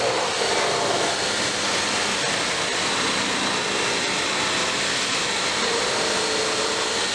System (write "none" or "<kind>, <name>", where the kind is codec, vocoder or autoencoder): none